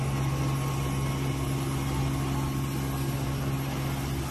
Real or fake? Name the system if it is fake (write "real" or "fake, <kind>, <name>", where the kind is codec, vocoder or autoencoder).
real